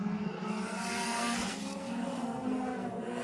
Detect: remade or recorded remade